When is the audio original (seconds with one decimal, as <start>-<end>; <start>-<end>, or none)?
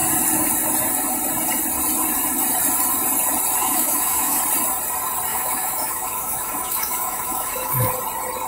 0.0-3.6; 4.4-5.3; 7.9-8.5